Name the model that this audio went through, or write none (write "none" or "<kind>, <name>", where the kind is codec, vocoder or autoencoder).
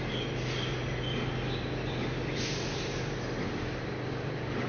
none